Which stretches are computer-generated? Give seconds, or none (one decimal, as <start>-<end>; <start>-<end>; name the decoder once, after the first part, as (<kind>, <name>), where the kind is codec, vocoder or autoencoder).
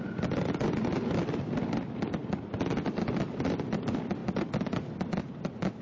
none